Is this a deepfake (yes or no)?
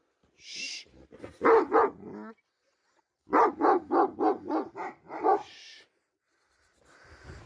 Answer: no